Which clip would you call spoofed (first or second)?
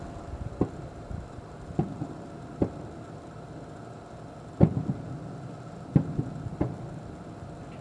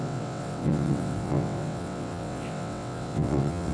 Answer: second